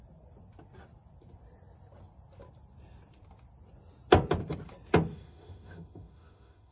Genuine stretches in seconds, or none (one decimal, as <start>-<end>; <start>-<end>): 0.0-5.1